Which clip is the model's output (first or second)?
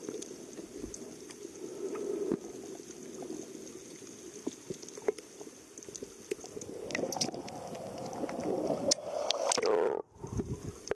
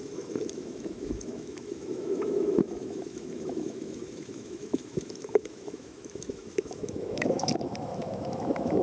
second